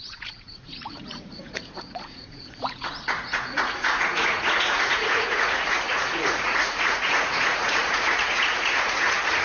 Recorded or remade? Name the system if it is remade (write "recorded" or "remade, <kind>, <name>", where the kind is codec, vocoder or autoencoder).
remade, vocoder, Vocos